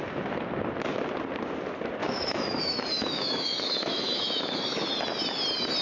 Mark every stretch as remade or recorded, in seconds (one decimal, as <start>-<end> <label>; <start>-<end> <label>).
0.0-2.0 recorded; 2.0-4.9 remade; 4.9-5.8 recorded